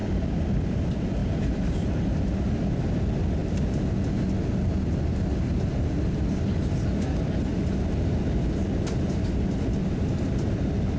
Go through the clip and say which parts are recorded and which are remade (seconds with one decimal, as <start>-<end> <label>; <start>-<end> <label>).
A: 0.0-0.6 remade; 0.6-1.2 recorded; 1.2-2.5 remade; 2.5-11.0 recorded